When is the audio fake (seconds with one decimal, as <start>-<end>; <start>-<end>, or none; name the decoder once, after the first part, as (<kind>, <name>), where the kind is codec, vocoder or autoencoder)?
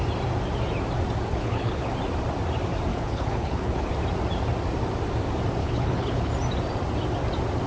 1.3-1.9 (codec, HILCodec); 2.9-3.9; 5.6-6.3